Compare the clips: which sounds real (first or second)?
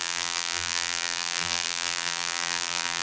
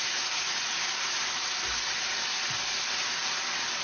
second